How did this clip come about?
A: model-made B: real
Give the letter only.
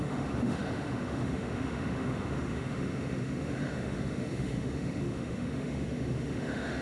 A